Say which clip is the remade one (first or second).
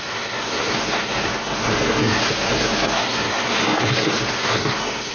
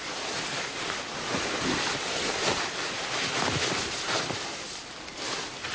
first